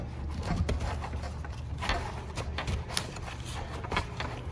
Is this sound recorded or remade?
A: recorded